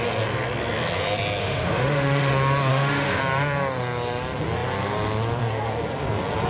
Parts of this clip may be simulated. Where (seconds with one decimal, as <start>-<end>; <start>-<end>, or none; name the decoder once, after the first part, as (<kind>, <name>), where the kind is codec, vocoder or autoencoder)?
1.4-2.3 (autoencoder, DAC-VAE); 2.7-3.2